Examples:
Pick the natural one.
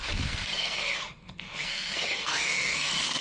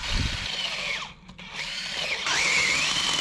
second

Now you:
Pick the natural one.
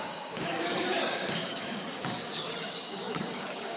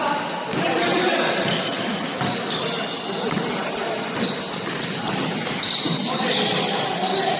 second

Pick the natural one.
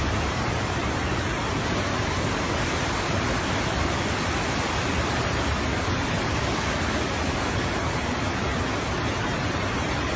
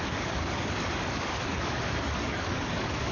first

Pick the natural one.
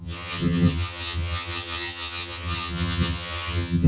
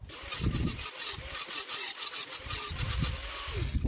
second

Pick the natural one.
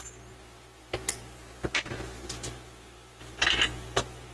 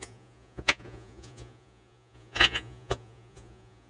first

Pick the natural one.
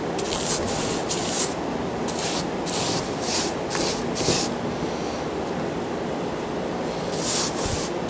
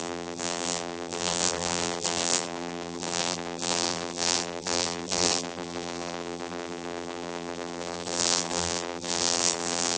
first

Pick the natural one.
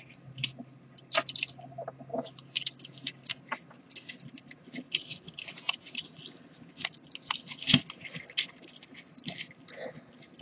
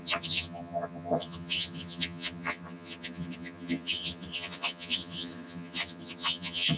first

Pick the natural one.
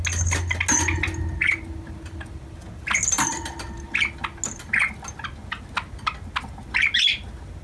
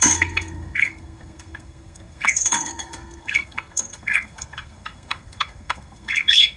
first